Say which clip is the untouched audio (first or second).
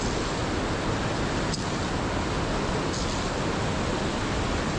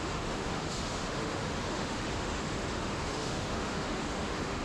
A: first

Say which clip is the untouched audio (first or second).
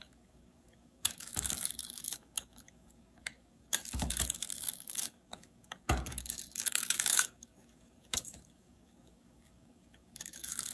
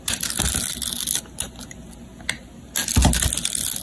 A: second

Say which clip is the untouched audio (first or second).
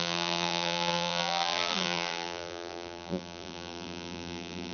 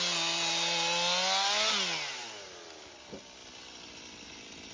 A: second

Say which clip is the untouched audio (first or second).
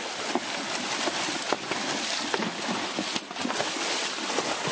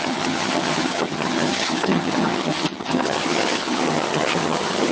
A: first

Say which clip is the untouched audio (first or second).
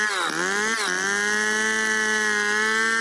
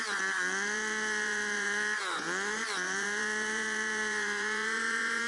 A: first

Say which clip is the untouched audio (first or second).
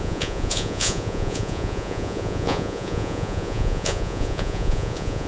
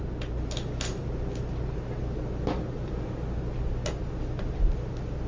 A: second